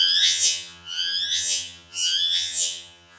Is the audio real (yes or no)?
no